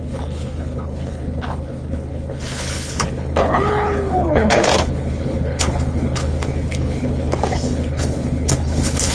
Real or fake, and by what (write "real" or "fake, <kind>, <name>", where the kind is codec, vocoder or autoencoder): fake, codec, HILCodec